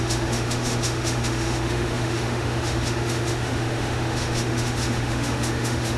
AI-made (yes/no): yes